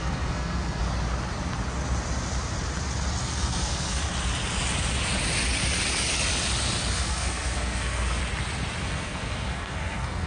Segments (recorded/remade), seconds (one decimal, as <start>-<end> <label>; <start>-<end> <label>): 0.0-0.8 remade; 0.8-3.2 recorded; 3.2-4.0 remade; 4.0-6.9 recorded; 6.9-8.2 remade; 8.2-8.8 recorded; 8.8-10.3 remade